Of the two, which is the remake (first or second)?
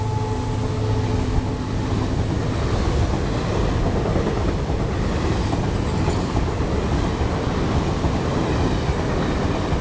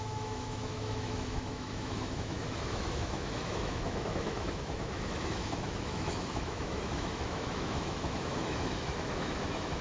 second